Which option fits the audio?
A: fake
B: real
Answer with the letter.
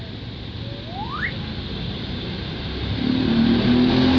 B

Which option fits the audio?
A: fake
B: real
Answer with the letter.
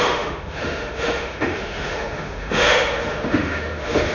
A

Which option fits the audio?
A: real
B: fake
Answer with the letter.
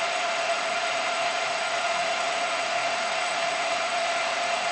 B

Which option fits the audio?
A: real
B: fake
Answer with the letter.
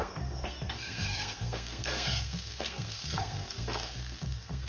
B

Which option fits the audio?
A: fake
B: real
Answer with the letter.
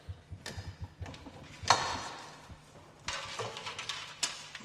B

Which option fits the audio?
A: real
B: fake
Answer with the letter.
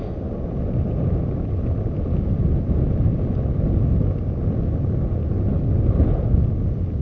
A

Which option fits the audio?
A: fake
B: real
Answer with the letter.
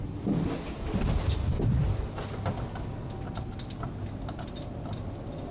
B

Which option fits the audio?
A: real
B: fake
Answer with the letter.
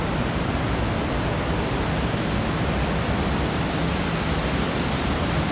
A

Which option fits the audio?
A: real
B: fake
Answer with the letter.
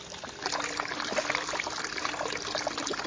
A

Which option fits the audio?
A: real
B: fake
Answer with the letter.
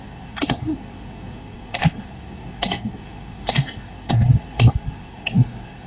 B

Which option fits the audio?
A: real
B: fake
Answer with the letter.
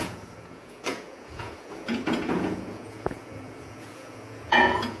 B